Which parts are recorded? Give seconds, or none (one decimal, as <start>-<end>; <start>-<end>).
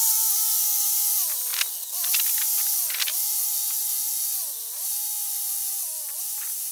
0.0-6.7